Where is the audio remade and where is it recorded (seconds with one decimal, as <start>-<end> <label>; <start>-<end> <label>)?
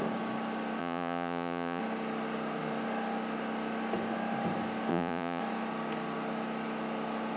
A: 0.0-0.8 recorded; 0.8-1.8 remade; 1.8-4.9 recorded; 4.9-5.4 remade; 5.4-7.4 recorded